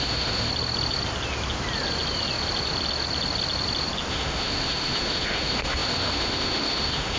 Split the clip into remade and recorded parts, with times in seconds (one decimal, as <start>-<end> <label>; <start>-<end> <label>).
0.0-0.5 remade; 0.5-4.1 recorded; 4.1-7.2 remade